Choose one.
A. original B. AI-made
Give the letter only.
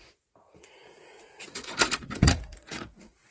B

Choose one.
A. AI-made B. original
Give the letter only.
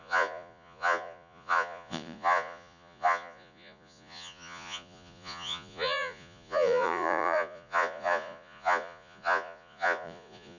A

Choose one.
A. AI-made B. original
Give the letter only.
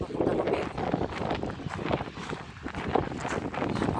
B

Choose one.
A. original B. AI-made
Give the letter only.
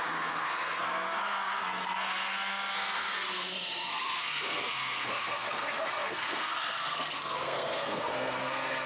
B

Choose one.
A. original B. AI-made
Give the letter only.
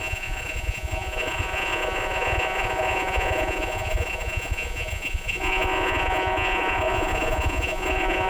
B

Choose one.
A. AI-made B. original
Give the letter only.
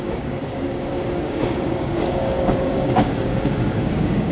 A